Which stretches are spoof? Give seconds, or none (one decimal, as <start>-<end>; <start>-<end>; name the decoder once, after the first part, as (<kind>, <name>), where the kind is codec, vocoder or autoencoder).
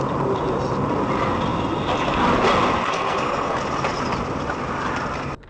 2.8-3.6 (codec, SNAC)